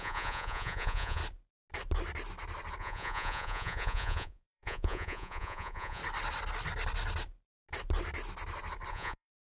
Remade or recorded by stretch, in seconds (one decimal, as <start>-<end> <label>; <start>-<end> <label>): 0.0-1.2 remade; 1.2-2.8 recorded; 2.8-6.0 remade; 6.0-8.9 recorded; 8.9-9.5 remade